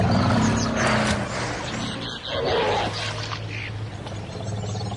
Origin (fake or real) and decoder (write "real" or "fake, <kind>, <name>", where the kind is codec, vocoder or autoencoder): real